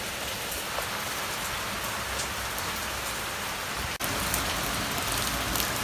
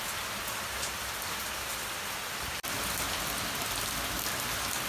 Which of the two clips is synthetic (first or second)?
second